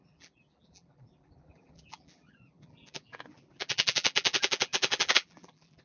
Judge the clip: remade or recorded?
remade